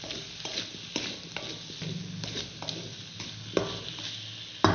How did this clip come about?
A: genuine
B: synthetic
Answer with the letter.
A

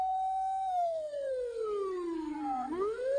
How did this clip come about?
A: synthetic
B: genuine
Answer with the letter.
A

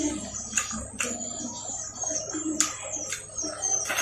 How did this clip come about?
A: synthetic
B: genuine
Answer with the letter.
B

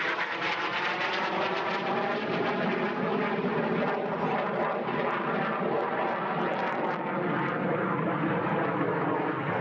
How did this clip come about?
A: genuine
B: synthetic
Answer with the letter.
A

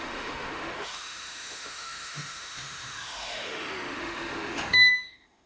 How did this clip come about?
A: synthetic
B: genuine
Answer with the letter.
A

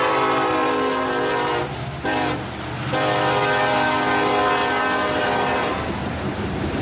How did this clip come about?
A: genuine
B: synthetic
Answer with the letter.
A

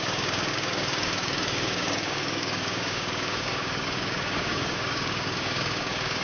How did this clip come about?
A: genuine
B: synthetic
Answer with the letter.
B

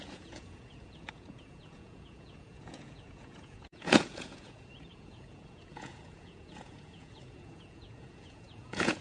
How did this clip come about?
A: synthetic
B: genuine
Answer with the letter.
A